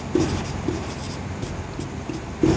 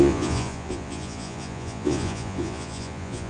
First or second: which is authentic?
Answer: first